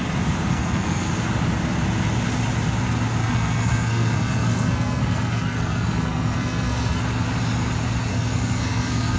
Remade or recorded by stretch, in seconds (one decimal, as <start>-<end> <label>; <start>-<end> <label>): 0.0-0.5 recorded; 0.5-1.1 remade; 1.1-3.2 recorded; 3.2-7.0 remade; 7.0-8.1 recorded; 8.1-9.2 remade